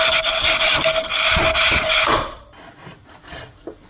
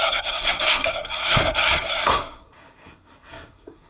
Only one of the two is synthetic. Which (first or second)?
second